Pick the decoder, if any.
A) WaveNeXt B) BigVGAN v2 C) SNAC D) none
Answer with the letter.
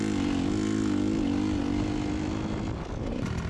D